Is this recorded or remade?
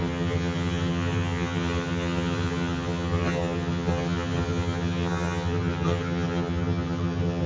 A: remade